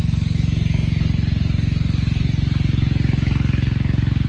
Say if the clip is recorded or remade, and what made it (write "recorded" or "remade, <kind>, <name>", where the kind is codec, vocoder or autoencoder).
recorded